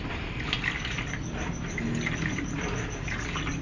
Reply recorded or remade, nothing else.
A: recorded